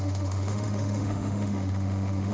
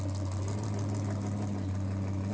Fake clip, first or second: first